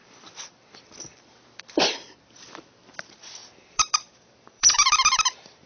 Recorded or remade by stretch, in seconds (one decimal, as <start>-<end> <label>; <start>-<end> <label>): 0.0-3.4 recorded; 3.4-5.7 remade